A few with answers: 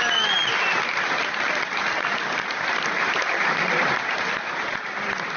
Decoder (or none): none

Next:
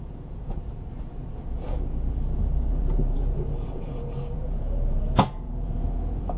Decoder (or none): vocoder, Vocos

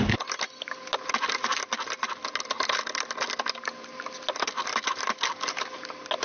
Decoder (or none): none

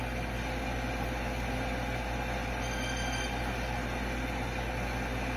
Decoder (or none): none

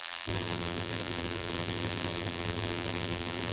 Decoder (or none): vocoder, BigVGAN v2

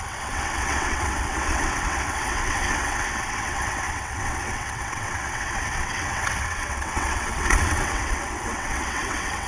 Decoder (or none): vocoder, WaveNeXt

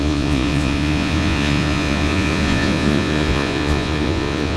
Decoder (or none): vocoder, Vocos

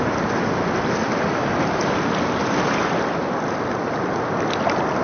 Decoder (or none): none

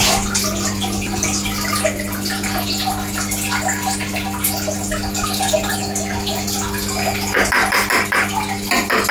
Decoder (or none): none